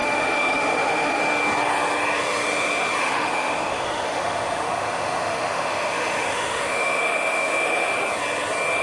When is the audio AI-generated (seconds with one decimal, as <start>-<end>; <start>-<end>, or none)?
0.0-1.2; 3.0-7.9